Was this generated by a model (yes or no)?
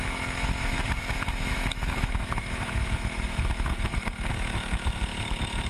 yes